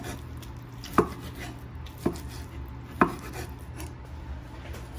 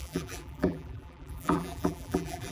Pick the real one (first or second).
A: first